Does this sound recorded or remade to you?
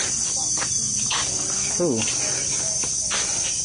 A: recorded